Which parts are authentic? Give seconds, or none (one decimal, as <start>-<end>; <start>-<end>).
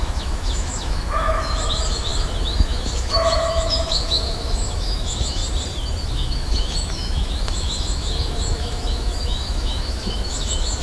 5.4-6.1